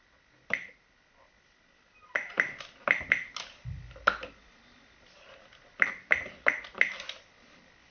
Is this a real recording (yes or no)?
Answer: yes